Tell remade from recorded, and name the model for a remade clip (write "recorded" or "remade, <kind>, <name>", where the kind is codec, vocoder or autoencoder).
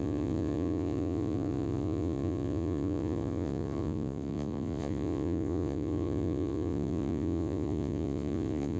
remade, vocoder, Vocos